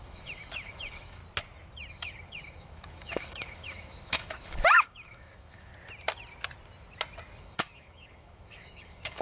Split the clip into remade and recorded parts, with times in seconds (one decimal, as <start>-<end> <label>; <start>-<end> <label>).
0.0-1.2 remade; 1.2-1.9 recorded; 1.9-5.7 remade; 5.7-7.4 recorded; 7.4-9.2 remade